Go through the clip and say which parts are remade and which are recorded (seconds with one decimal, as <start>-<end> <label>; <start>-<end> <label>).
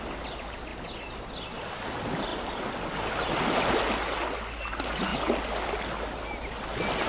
0.0-7.1 recorded